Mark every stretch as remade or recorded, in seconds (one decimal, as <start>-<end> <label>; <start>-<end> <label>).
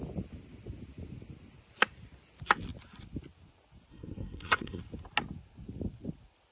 0.0-3.9 recorded; 3.9-4.8 remade; 4.8-6.5 recorded